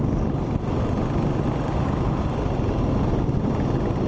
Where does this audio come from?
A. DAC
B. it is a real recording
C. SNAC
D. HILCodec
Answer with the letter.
B